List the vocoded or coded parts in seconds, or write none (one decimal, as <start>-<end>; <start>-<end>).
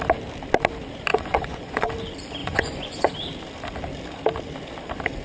1.1-1.9; 2.4-3.1